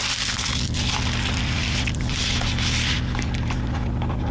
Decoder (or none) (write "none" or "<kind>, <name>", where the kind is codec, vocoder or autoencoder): none